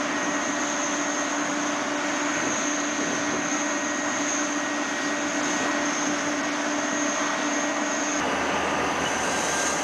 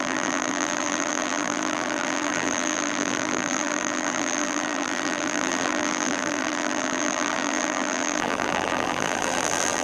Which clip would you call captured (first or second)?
first